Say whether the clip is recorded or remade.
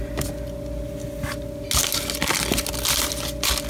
recorded